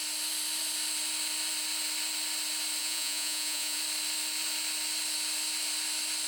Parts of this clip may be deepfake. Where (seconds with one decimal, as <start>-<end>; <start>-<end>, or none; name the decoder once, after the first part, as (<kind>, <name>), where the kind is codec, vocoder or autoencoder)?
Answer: 2.8-3.8 (vocoder, Vocos)